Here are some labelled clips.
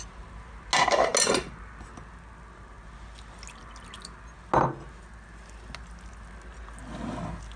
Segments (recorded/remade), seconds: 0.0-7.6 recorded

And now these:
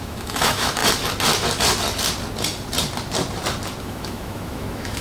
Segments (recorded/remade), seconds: 0.0-0.8 remade; 0.8-3.8 recorded; 3.8-5.0 remade